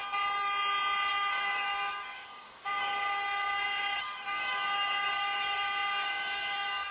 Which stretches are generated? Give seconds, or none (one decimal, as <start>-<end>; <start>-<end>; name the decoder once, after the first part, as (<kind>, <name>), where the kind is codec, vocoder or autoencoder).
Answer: 1.1-6.9 (codec, DAC)